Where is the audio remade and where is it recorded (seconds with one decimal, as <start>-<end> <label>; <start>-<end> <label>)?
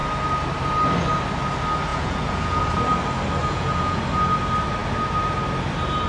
0.0-1.9 recorded; 1.9-2.6 remade; 2.6-3.4 recorded; 3.4-4.0 remade; 4.0-6.1 recorded